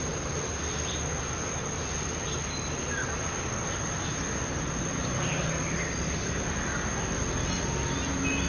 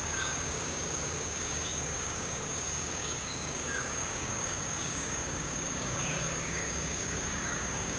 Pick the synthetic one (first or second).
second